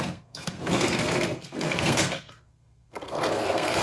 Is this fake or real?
fake